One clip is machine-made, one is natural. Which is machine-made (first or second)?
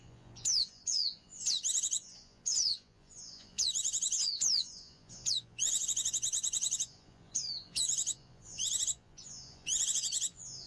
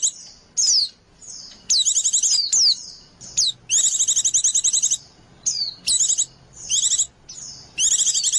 first